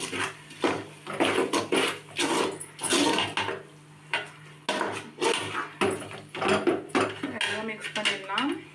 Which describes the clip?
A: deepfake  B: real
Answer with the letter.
B